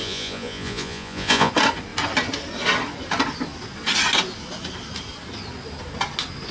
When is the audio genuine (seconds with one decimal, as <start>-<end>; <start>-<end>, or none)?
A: 1.5-6.5

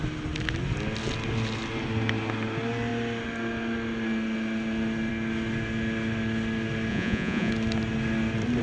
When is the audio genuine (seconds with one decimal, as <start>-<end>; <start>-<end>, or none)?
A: 0.0-6.9; 7.5-8.6

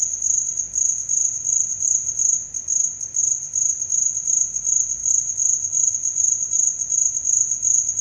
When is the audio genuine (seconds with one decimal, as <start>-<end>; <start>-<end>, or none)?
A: 0.0-8.0